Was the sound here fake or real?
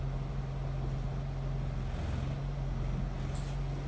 real